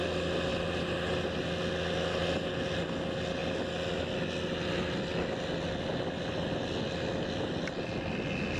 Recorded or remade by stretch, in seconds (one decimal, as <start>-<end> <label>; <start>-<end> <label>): 0.0-8.6 recorded

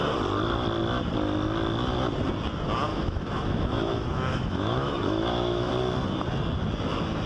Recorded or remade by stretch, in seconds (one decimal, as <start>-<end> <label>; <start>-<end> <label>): 0.0-2.9 recorded; 2.9-5.7 remade; 5.7-7.3 recorded

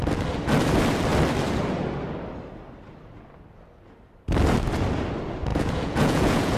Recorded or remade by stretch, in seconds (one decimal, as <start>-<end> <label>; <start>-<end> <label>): 0.0-5.5 recorded; 5.5-6.6 remade

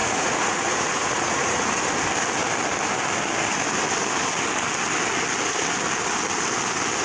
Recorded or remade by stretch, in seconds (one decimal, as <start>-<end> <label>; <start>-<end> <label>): 0.0-1.7 remade; 1.7-7.0 recorded